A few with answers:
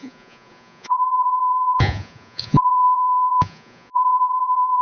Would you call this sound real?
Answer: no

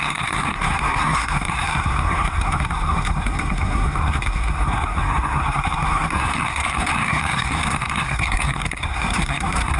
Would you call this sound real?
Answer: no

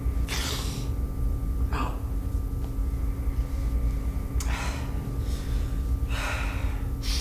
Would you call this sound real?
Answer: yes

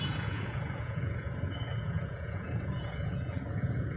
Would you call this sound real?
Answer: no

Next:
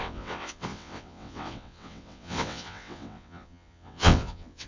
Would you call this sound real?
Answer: no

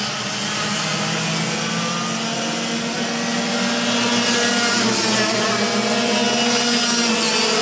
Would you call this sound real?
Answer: yes